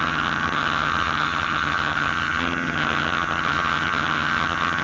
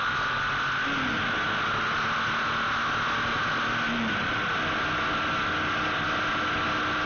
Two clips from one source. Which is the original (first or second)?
second